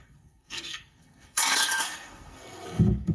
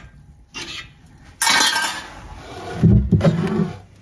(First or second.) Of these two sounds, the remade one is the first